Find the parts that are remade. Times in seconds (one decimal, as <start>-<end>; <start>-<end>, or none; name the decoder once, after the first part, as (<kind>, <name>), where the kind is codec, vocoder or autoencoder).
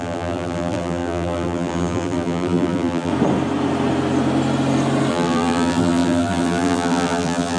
0.0-3.1 (vocoder, BigVGAN v2); 5.1-7.6